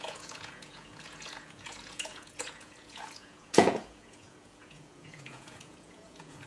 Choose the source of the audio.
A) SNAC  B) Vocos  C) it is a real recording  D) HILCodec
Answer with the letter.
B